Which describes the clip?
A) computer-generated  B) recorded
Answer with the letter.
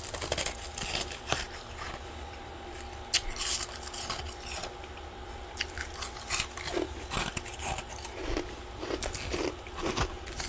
B